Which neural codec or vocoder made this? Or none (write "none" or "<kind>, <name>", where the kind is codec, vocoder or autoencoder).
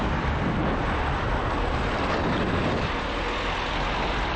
none